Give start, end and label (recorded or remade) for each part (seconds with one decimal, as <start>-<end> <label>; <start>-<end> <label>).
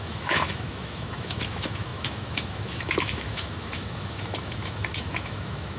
0.0-5.8 remade